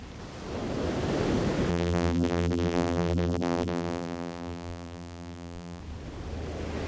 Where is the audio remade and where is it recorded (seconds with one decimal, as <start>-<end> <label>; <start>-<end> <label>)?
0.0-1.7 recorded; 1.7-5.8 remade; 5.8-6.9 recorded